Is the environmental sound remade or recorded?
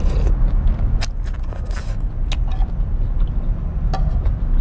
recorded